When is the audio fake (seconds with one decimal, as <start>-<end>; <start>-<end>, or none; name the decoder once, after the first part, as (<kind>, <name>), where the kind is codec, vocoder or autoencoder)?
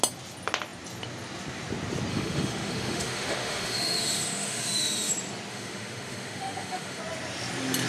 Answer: 2.1-5.1 (autoencoder, DAC-VAE); 5.5-7.0